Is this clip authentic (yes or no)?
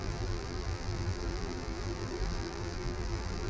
no